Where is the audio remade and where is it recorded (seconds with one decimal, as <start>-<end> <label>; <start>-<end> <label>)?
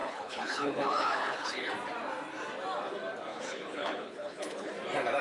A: 0.0-1.7 remade; 1.7-3.3 recorded; 3.3-4.7 remade; 4.7-5.2 recorded